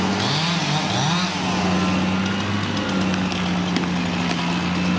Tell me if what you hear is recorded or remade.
recorded